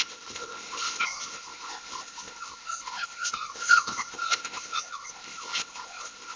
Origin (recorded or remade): remade